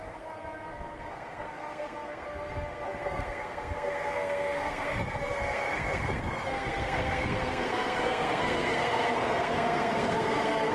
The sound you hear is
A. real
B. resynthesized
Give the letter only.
B